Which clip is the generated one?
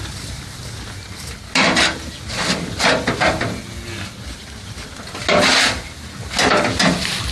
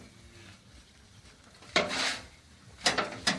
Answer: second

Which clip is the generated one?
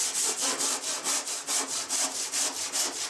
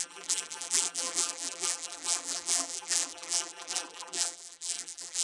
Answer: second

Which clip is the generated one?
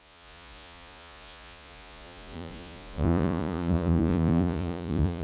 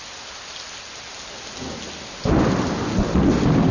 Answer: first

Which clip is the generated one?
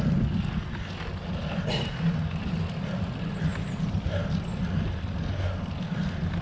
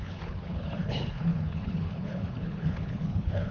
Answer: second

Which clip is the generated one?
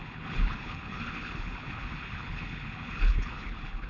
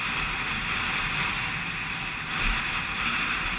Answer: first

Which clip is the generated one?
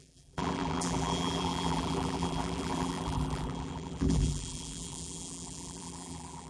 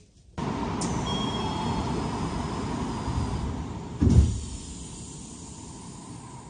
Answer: first